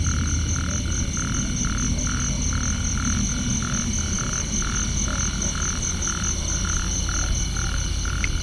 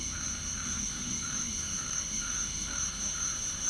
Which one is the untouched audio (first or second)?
first